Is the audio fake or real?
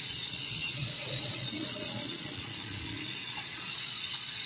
fake